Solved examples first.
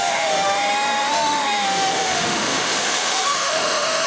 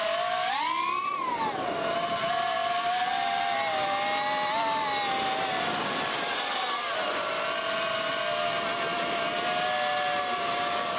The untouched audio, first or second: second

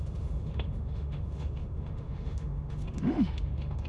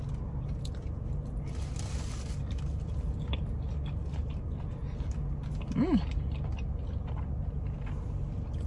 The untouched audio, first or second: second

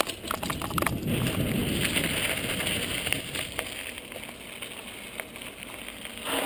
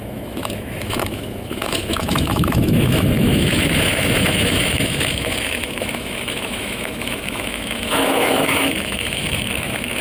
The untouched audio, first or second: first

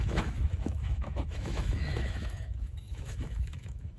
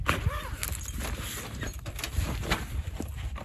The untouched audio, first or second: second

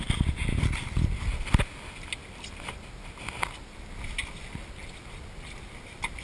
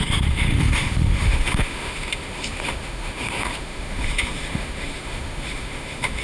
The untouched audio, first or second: first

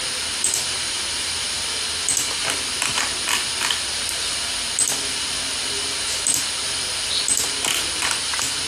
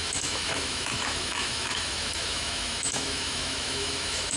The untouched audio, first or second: first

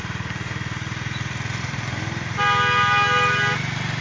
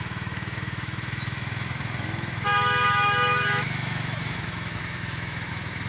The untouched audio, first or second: first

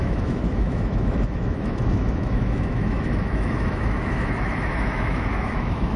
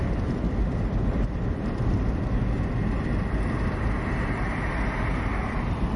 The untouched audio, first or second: second